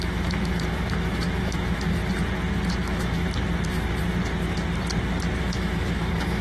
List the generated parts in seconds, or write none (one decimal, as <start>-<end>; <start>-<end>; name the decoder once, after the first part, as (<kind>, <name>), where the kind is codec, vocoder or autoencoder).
0.0-2.0 (autoencoder, DAC-VAE); 2.8-3.2; 5.4-6.4